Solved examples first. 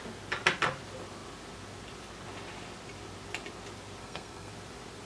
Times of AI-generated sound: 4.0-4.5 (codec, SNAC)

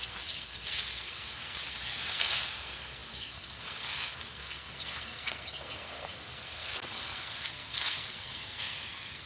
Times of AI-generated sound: 0.0-9.3 (codec, SNAC)

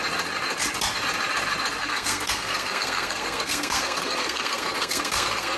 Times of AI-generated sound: 1.8-5.6 (codec, SNAC)

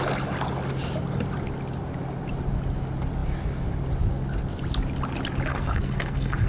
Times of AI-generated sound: 5.5-6.5 (codec, SNAC)

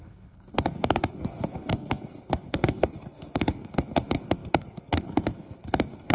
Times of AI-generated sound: 0.0-6.1 (codec, SNAC)